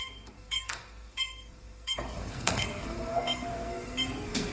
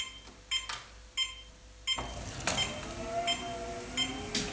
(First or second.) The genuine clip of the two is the second